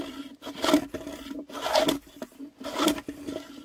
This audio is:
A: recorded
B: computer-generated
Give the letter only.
A